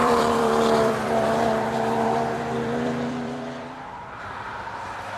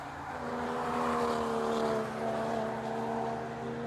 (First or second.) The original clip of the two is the second